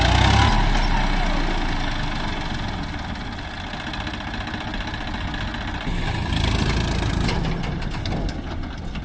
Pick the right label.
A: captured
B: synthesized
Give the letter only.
A